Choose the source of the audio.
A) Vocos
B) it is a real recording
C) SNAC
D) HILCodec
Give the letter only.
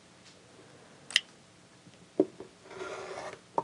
B